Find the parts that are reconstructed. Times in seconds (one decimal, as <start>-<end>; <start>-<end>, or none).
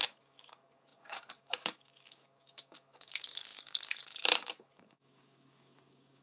0.0-6.2